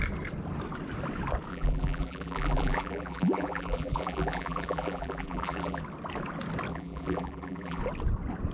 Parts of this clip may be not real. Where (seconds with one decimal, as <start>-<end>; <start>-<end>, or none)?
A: 1.5-5.8; 6.7-7.8